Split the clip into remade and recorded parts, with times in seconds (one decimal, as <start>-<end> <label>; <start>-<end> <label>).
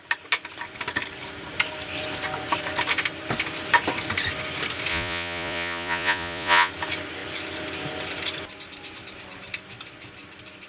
0.0-4.9 recorded; 4.9-6.7 remade; 6.7-10.7 recorded